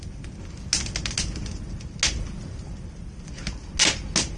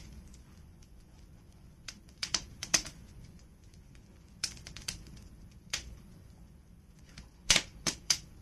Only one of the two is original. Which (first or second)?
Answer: first